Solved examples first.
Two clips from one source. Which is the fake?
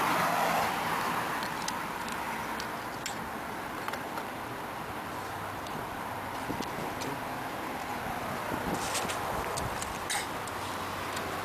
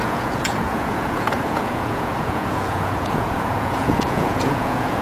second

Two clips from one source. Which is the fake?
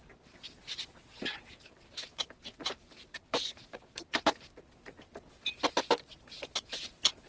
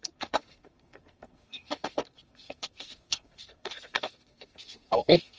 second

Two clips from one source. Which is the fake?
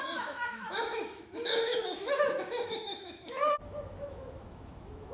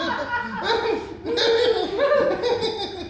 first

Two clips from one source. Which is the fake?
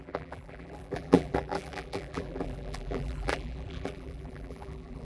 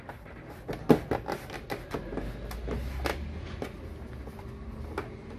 first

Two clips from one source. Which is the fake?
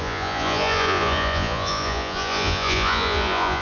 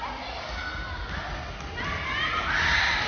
first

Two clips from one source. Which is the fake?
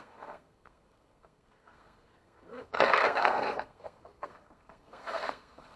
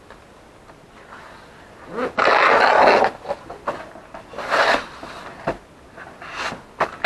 first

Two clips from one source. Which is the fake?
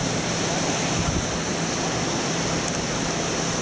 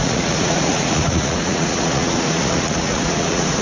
second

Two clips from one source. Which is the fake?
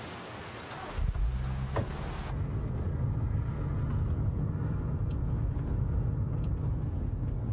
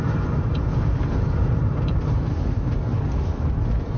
second